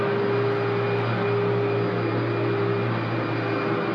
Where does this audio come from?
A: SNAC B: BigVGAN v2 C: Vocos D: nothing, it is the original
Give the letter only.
D